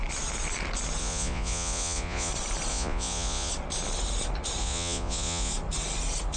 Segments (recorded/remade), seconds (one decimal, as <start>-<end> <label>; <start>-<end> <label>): 0.0-1.0 recorded; 1.0-2.3 remade; 2.3-2.7 recorded; 2.7-3.5 remade; 3.5-4.6 recorded; 4.6-5.5 remade; 5.5-6.4 recorded

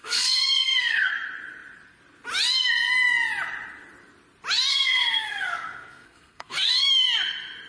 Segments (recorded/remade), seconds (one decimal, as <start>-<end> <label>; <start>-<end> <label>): 0.0-1.1 remade; 1.1-4.7 recorded; 4.7-6.9 remade; 6.9-7.7 recorded

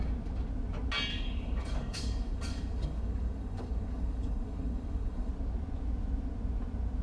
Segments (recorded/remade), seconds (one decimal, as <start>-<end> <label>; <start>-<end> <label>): 0.0-1.1 recorded; 1.1-5.3 remade; 5.3-7.0 recorded

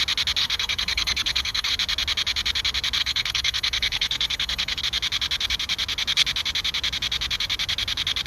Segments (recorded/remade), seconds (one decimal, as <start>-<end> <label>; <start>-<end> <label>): 0.0-0.4 recorded; 0.4-1.7 remade; 1.7-3.0 recorded; 3.0-4.8 remade; 4.8-8.3 recorded